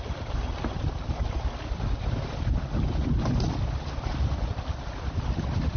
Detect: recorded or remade recorded